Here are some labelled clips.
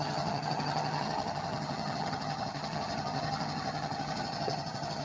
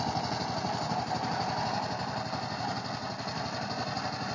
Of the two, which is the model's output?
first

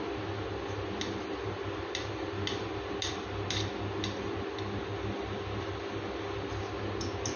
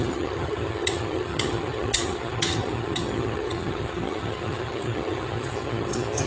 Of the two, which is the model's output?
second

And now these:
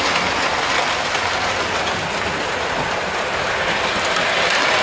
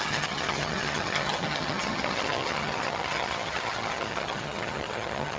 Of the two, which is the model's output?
second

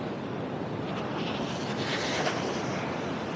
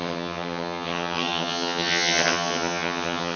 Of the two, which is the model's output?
second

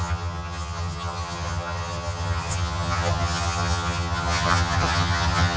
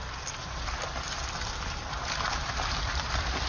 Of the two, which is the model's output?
first